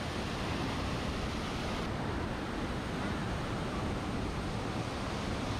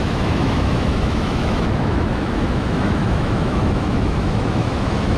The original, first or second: first